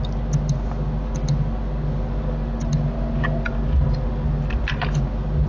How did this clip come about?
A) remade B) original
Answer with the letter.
B